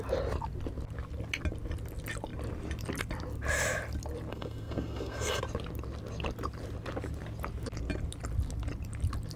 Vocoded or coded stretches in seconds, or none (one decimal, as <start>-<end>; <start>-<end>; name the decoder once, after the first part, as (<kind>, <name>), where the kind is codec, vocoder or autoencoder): 4.3-5.4 (codec, SNAC)